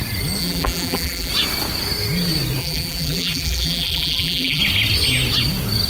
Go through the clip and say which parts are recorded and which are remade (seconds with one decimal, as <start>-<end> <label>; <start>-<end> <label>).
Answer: 0.0-0.4 recorded; 0.4-1.3 remade; 1.3-2.6 recorded; 2.6-4.6 remade; 4.6-5.9 recorded